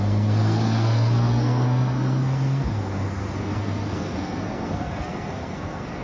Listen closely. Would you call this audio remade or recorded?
remade